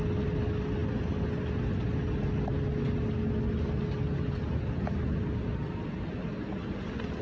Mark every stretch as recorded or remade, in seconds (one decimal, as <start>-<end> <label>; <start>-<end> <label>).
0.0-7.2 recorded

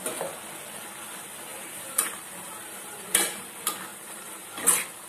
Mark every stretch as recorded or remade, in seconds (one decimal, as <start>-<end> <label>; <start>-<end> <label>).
0.0-1.5 recorded; 1.5-3.5 remade; 3.5-3.9 recorded; 3.9-4.5 remade; 4.5-5.1 recorded

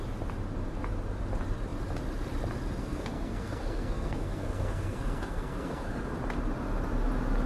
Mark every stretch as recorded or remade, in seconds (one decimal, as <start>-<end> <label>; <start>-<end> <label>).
0.0-2.8 recorded; 2.8-6.0 remade; 6.0-7.5 recorded

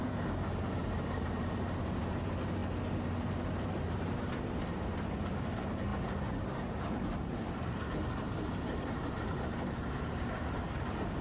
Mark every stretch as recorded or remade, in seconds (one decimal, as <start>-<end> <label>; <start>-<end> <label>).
0.0-2.6 remade; 2.6-3.2 recorded; 3.2-5.9 remade; 5.9-6.4 recorded; 6.4-11.2 remade